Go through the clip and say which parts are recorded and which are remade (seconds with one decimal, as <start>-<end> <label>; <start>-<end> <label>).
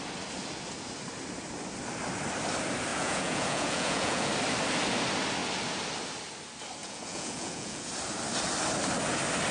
0.0-2.9 recorded; 2.9-4.3 remade; 4.3-6.8 recorded; 6.8-7.9 remade; 7.9-9.5 recorded